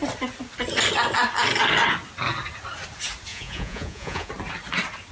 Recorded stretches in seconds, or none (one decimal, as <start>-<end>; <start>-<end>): 0.0-3.3; 4.3-5.1